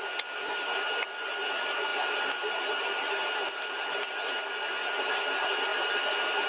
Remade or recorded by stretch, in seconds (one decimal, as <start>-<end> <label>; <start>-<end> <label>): 0.0-6.5 recorded

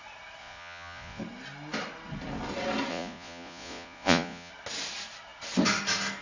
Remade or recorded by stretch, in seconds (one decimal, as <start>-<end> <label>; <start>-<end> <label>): 0.0-0.4 recorded; 0.4-1.2 remade; 1.2-2.9 recorded; 2.9-4.5 remade; 4.5-6.2 recorded

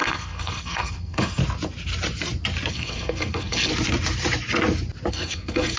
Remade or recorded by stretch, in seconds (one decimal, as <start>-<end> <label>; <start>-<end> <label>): 0.0-1.4 remade; 1.4-2.7 recorded; 2.7-3.7 remade; 3.7-5.1 recorded; 5.1-5.8 remade

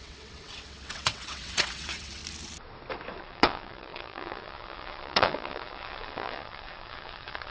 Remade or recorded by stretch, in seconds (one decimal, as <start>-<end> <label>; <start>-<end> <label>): 0.0-2.2 remade; 2.2-3.2 recorded; 3.2-7.5 remade